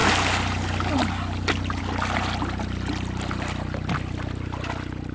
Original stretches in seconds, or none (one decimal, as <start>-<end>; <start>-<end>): 0.0-5.1